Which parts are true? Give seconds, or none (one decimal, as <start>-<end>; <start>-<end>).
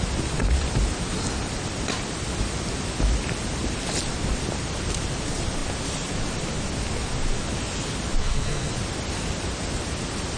0.0-8.2; 8.7-10.4